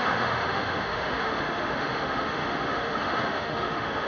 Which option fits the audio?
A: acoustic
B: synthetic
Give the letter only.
B